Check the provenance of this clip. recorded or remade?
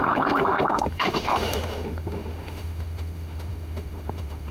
remade